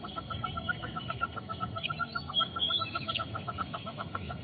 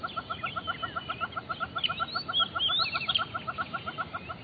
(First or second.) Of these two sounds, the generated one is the first